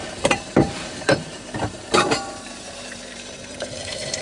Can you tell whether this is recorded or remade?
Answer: remade